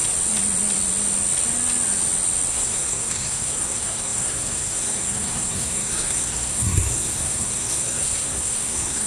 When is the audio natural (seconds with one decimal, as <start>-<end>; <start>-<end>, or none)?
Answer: 0.0-2.5